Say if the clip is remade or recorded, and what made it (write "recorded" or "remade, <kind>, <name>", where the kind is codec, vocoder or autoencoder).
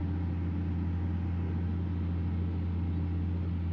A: recorded